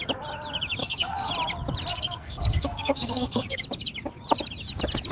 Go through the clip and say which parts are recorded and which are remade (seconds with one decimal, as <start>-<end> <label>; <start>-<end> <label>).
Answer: 0.0-0.8 recorded; 0.8-1.3 remade; 1.3-1.9 recorded; 1.9-3.6 remade; 3.6-5.1 recorded